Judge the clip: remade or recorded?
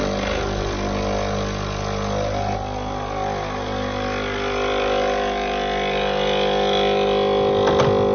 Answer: recorded